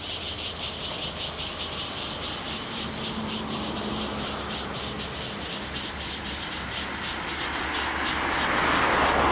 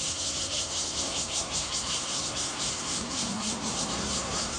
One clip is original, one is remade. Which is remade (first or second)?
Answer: second